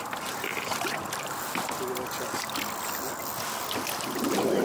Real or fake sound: real